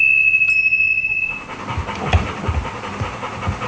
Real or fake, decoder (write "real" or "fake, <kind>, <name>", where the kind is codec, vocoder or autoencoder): real